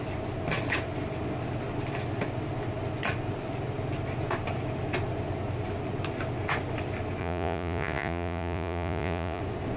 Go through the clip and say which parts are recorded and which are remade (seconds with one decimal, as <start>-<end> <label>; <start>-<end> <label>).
0.0-7.2 recorded; 7.2-9.4 remade; 9.4-9.8 recorded